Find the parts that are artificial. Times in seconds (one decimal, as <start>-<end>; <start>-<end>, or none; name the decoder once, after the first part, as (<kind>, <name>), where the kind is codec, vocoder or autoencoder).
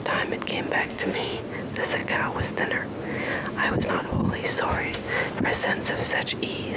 0.8-1.4 (autoencoder, DAC-VAE); 4.7-5.3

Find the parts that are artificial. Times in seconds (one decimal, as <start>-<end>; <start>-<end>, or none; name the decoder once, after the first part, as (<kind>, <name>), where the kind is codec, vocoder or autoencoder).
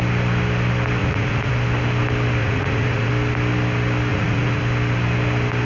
1.0-1.5 (vocoder, Vocos); 2.4-3.1; 4.1-4.6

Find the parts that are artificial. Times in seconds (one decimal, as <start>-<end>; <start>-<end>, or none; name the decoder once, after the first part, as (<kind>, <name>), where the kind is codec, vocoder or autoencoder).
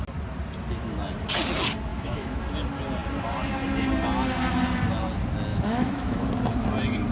1.9-2.4 (autoencoder, DAC-VAE); 5.5-6.3